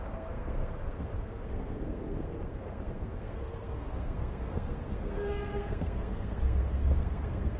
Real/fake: fake